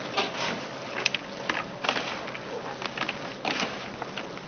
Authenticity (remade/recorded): recorded